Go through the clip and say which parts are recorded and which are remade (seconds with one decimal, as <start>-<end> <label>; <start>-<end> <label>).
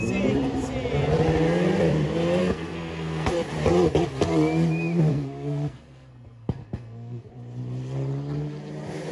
0.0-2.4 recorded; 2.4-3.3 remade; 3.3-5.1 recorded; 5.1-7.3 remade; 7.3-9.1 recorded